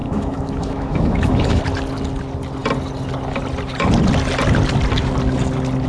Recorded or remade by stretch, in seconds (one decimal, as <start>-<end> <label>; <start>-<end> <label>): 0.0-1.6 remade; 1.6-5.9 recorded